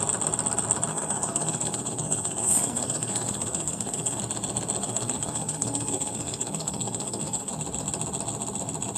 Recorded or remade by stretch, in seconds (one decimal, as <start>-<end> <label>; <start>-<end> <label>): 0.0-0.9 recorded; 0.9-4.2 remade; 4.2-4.8 recorded; 4.8-7.5 remade; 7.5-9.0 recorded